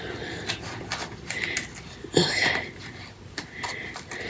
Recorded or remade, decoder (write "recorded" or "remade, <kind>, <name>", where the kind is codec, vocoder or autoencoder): recorded